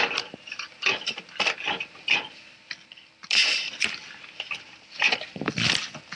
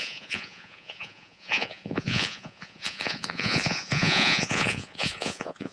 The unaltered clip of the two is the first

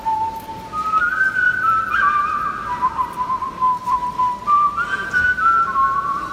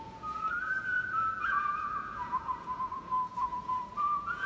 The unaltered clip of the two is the first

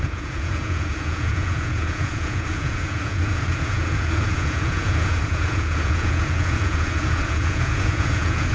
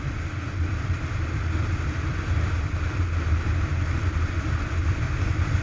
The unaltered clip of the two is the second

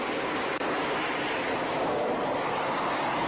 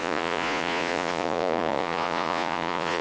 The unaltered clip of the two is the first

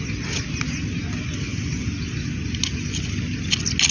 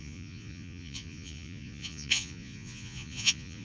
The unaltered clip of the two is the first